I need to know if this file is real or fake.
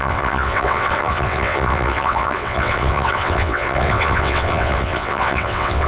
fake